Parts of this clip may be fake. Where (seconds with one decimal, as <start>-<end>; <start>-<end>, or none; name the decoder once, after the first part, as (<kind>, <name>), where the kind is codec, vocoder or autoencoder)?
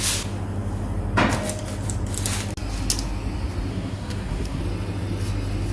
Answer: 3.7-4.6 (codec, SNAC)